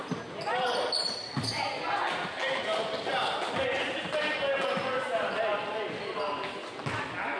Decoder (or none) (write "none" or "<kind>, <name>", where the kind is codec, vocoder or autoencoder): none